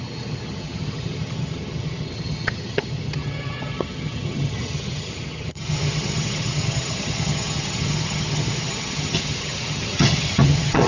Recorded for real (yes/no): no